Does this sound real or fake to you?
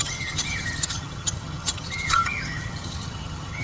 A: fake